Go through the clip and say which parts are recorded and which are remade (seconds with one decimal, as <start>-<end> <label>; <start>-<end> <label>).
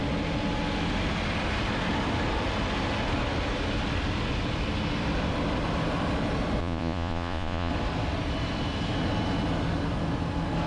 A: 0.0-6.6 recorded; 6.6-7.7 remade; 7.7-10.7 recorded